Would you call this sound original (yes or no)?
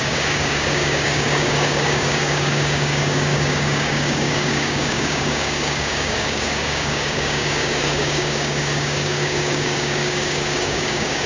no